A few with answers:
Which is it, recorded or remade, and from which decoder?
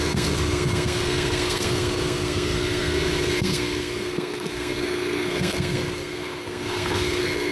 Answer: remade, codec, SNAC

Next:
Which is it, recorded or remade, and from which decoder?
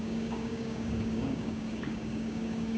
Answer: remade, codec, DAC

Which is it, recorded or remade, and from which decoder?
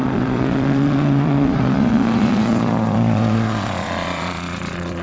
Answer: remade, vocoder, Vocos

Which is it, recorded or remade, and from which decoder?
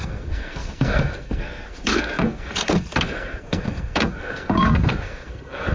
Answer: remade, codec, SNAC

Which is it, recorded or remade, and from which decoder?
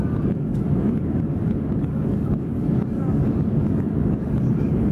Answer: remade, codec, DAC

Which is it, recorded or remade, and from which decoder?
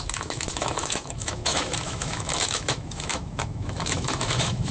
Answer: remade, autoencoder, DAC-VAE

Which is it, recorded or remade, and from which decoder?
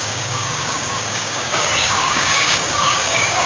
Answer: remade, codec, DAC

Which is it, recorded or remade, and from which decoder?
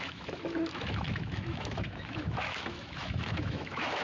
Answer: remade, autoencoder, DAC-VAE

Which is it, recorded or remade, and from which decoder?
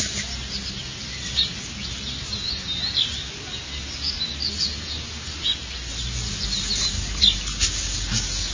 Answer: recorded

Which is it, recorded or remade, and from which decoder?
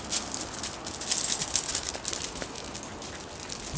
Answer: recorded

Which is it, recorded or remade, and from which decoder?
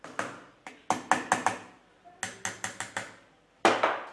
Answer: recorded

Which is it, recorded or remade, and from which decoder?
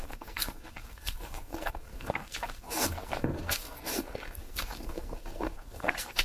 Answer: remade, codec, SNAC